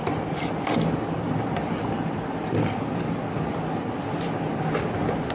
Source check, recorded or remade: recorded